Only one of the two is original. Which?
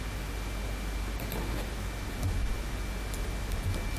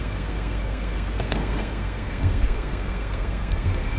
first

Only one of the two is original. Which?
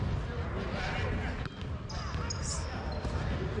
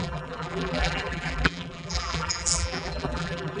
first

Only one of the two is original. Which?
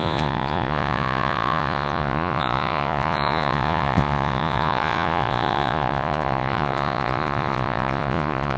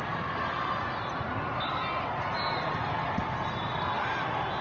second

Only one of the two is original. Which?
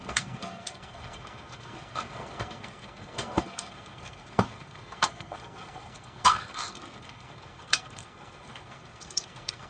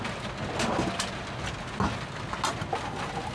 second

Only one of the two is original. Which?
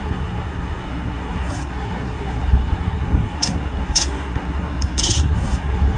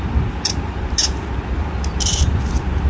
second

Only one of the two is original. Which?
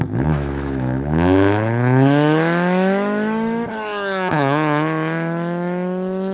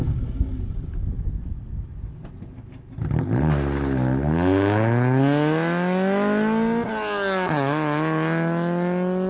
second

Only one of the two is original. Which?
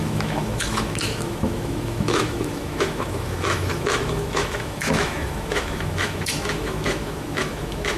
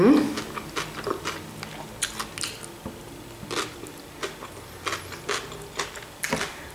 second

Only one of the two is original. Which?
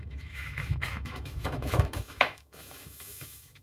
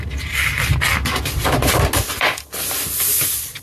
second